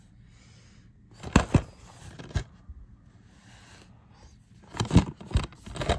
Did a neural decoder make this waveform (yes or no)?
no